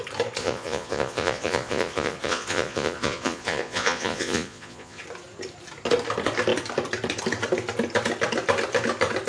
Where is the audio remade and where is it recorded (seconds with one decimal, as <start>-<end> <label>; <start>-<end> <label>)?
0.0-0.4 recorded; 0.4-5.0 remade; 5.0-9.3 recorded